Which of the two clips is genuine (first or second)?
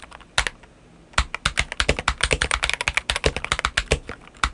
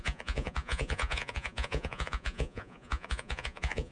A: first